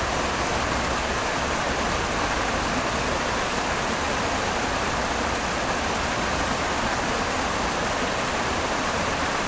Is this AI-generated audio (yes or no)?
no